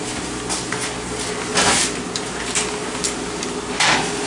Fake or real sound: real